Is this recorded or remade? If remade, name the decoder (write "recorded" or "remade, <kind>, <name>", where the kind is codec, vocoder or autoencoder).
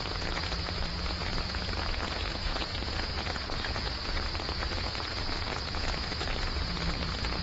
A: remade, vocoder, Vocos